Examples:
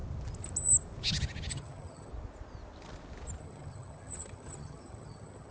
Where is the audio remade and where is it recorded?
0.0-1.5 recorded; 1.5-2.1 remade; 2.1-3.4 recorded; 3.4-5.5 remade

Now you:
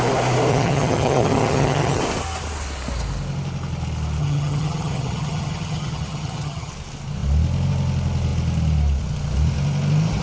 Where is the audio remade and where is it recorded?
0.0-0.5 recorded; 0.5-2.0 remade; 2.0-4.2 recorded; 4.2-6.7 remade; 6.7-10.2 recorded

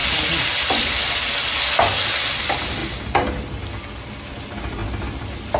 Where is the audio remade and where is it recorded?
0.0-5.6 recorded

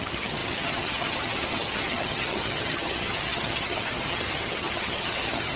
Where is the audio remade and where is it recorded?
0.0-5.6 remade